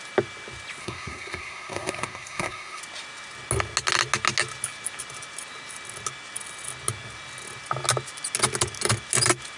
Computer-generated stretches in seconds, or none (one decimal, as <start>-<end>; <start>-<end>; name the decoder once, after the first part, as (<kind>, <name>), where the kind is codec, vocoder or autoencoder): 0.8-2.8 (codec, SNAC)